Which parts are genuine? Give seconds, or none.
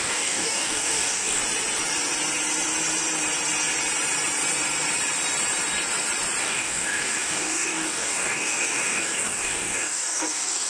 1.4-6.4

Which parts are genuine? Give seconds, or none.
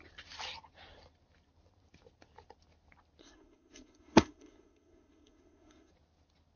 0.0-3.2; 5.9-6.6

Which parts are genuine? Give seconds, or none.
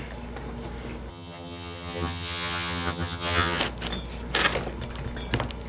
0.0-1.1; 3.6-5.7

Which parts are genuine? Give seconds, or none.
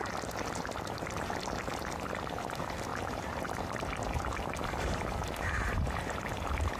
0.0-2.9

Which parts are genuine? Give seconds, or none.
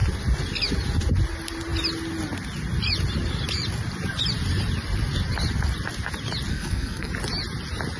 0.0-6.5; 7.1-8.0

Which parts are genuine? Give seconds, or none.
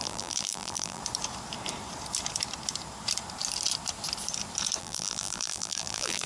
1.0-4.8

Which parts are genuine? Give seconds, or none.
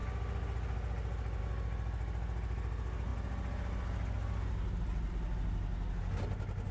0.0-6.7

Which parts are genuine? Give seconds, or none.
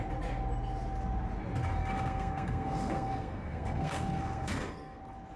0.0-1.8; 5.0-5.4